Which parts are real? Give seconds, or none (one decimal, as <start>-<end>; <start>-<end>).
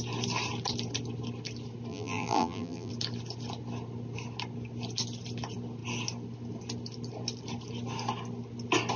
0.0-1.9; 2.9-9.0